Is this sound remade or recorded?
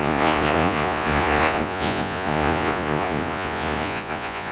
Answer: remade